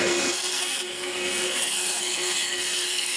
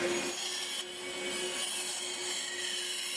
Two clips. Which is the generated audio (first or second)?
first